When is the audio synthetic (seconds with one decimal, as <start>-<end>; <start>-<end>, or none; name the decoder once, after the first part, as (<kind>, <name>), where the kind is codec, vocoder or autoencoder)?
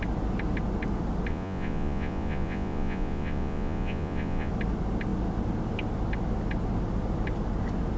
1.3-4.5 (vocoder, Vocos)